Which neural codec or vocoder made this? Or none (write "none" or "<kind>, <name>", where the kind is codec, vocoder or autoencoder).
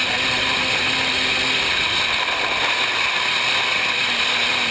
none